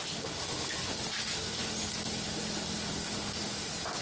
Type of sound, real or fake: real